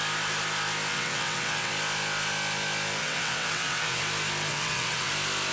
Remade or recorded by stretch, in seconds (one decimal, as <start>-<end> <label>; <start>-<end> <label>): 0.0-0.9 recorded; 0.9-1.7 remade; 1.7-3.0 recorded; 3.0-4.0 remade; 4.0-4.5 recorded; 4.5-5.1 remade; 5.1-5.5 recorded